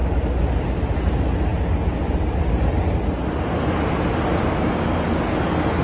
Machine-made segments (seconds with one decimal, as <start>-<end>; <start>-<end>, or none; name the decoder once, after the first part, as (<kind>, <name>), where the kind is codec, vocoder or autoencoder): none